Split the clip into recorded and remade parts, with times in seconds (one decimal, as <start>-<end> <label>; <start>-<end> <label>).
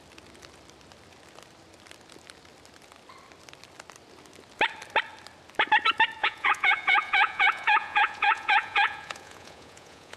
0.0-6.2 recorded; 6.2-10.2 remade